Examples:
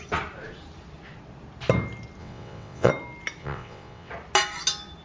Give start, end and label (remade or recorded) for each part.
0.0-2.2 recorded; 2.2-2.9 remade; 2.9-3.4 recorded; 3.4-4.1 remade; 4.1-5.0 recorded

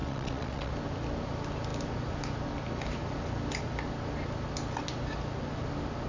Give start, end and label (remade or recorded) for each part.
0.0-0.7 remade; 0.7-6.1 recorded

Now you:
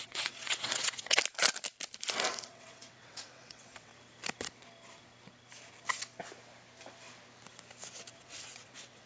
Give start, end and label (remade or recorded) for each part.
0.0-1.2 remade; 1.2-2.5 recorded; 2.5-3.9 remade; 3.9-8.2 recorded; 8.2-9.1 remade

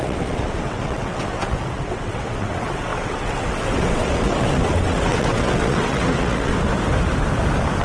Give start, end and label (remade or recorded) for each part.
0.0-6.5 remade; 6.5-7.8 recorded

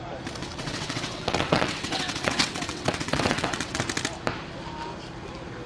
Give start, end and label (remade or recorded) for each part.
0.0-0.4 recorded; 0.4-3.8 remade; 3.8-5.7 recorded

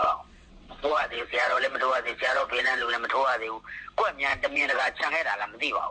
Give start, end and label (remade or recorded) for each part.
0.0-2.9 remade; 2.9-4.3 recorded; 4.3-5.1 remade; 5.1-5.9 recorded

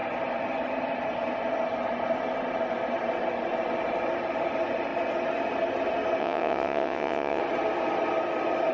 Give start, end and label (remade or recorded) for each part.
0.0-6.2 recorded; 6.2-7.4 remade; 7.4-8.7 recorded

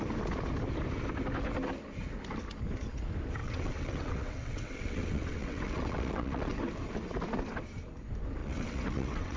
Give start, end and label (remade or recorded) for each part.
0.0-3.4 recorded; 3.4-6.6 remade; 6.6-8.4 recorded; 8.4-9.4 remade